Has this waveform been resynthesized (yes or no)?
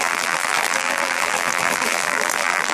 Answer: yes